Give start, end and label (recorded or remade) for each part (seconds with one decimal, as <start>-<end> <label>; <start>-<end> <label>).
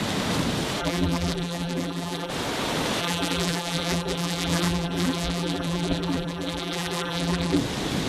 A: 0.0-0.8 recorded; 0.8-2.3 remade; 2.3-3.0 recorded; 3.0-7.6 remade; 7.6-8.1 recorded